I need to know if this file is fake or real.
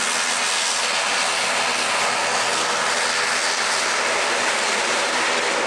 real